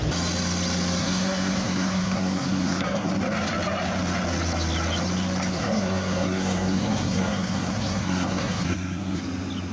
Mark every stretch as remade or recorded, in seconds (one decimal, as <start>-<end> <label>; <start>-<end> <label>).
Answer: 0.0-1.0 recorded; 1.0-3.1 remade; 3.1-5.5 recorded; 5.5-9.2 remade; 9.2-9.7 recorded